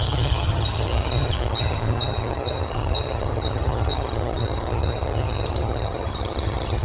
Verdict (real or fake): fake